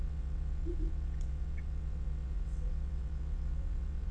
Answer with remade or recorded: remade